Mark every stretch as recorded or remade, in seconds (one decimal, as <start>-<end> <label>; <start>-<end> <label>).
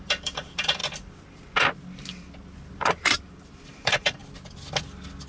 0.0-0.8 remade; 0.8-2.7 recorded; 2.7-4.2 remade; 4.2-5.3 recorded